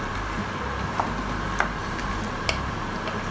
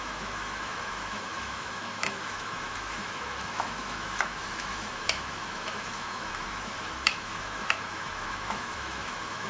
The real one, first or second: first